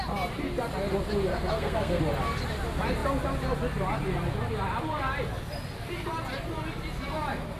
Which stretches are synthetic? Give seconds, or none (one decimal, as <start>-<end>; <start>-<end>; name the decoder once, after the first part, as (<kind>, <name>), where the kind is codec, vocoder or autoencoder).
1.3-2.0 (codec, SNAC)